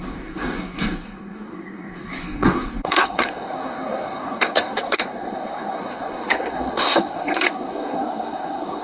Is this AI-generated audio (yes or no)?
yes